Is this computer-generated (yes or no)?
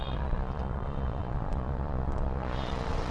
yes